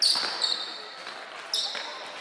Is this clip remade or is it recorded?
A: recorded